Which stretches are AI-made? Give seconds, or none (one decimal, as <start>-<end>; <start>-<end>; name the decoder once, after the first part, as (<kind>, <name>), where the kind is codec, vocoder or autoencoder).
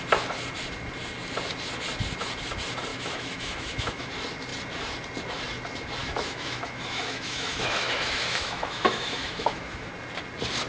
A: 2.9-4.1 (autoencoder, DAC-VAE); 6.0-9.9